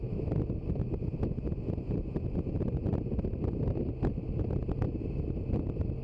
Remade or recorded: recorded